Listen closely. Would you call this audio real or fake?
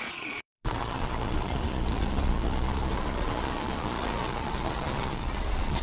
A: fake